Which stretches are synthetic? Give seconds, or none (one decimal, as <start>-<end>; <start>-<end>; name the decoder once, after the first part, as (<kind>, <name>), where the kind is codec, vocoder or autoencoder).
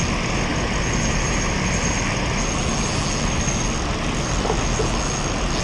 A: none